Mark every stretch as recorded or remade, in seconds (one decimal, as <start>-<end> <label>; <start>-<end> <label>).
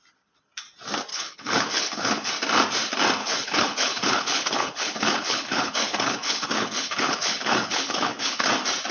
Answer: 0.0-1.1 recorded; 1.1-2.3 remade; 2.3-3.2 recorded; 3.2-8.5 remade; 8.5-8.9 recorded